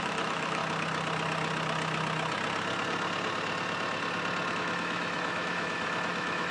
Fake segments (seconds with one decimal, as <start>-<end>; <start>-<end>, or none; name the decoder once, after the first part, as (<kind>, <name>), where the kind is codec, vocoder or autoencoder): 0.0-0.6 (autoencoder, DAC-VAE); 4.5-6.5